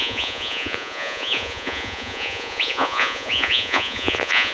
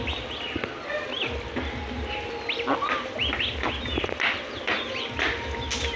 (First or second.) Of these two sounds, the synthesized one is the first